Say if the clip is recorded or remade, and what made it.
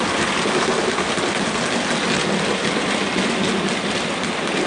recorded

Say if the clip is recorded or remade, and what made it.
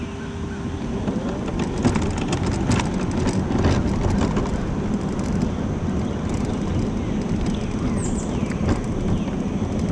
recorded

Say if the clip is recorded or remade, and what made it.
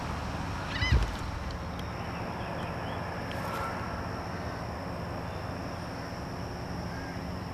recorded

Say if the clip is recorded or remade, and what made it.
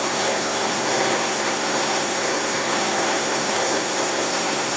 remade, codec, SNAC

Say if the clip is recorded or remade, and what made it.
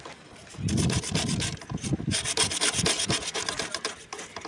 recorded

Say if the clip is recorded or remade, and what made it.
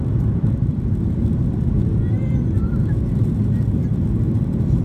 remade, vocoder, BigVGAN v2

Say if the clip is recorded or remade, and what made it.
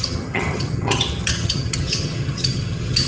remade, vocoder, HiFi-GAN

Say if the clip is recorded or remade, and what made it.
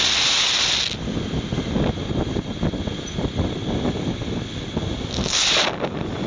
recorded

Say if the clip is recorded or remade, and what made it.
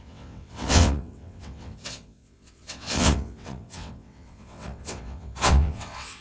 remade, vocoder, WaveNeXt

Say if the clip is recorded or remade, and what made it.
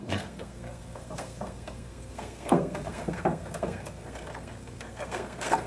remade, codec, SNAC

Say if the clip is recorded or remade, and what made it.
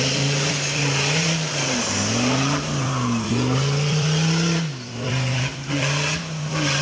remade, vocoder, BigVGAN v2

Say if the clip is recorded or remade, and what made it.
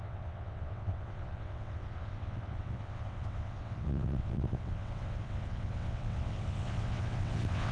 remade, vocoder, WaveNeXt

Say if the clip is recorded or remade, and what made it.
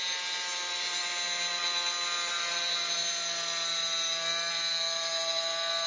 recorded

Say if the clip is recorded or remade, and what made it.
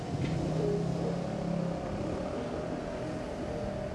recorded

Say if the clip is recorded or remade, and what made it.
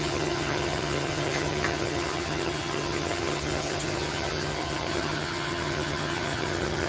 remade, vocoder, HiFi-GAN